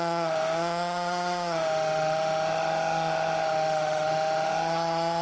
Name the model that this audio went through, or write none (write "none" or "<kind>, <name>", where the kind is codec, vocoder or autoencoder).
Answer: autoencoder, DAC-VAE